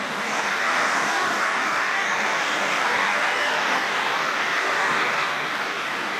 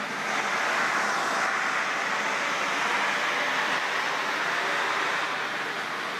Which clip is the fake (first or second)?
first